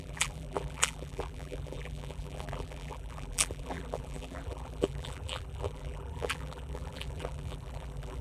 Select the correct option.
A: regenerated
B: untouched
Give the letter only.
A